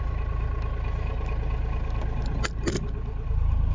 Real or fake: real